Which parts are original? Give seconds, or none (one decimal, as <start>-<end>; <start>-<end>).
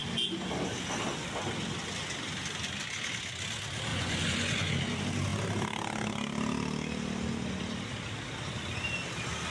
0.0-3.9; 4.7-9.5